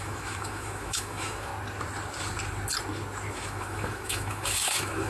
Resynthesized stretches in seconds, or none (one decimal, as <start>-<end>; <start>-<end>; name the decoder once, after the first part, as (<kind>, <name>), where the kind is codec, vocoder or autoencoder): 0.0-1.5 (autoencoder, DAC-VAE); 3.3-5.1